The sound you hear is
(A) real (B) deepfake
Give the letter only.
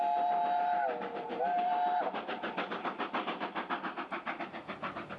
A